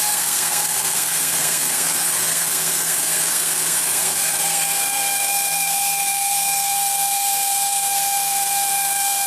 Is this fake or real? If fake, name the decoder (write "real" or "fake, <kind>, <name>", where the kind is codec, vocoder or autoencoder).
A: fake, codec, SNAC